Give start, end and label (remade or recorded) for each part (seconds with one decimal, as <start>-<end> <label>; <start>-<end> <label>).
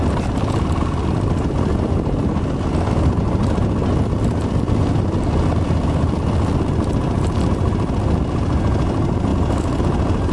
0.0-10.3 recorded